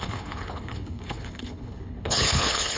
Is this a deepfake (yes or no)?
yes